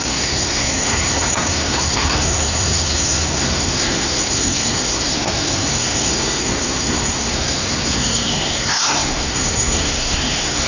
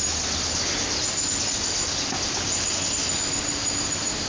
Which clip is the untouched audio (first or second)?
second